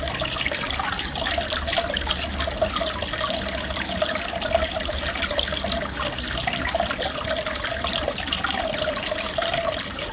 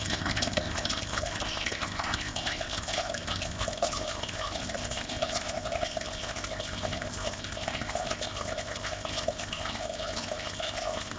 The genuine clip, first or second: first